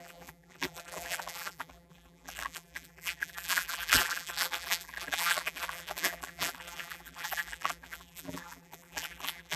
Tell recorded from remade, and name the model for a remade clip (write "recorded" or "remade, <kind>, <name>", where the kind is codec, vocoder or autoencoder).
remade, vocoder, BigVGAN v2